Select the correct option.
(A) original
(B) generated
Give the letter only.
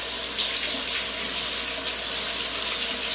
A